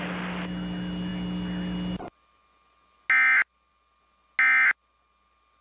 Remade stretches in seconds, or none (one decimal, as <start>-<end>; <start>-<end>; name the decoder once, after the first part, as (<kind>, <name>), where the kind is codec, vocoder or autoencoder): none